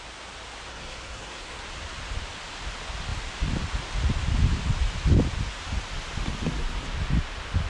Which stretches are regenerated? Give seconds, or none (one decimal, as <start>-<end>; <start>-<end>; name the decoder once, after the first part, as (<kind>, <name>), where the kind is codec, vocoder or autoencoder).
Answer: 0.7-1.6 (codec, SNAC)